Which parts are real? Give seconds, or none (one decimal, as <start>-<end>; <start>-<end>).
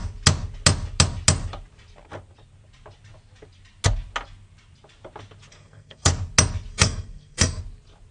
0.0-5.5; 6.1-6.7; 7.6-8.1